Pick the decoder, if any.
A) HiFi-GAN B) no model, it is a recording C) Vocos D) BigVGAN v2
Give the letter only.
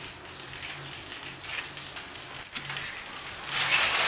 B